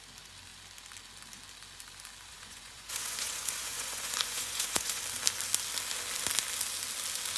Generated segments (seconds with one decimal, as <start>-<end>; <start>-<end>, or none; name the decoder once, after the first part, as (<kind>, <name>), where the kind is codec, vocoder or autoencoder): 2.3-5.0 (vocoder, Vocos)